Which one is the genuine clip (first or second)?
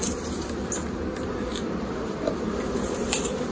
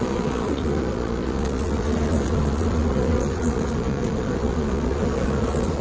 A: first